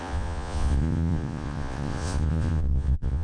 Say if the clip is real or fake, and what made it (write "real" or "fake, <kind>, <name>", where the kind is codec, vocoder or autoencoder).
fake, vocoder, Vocos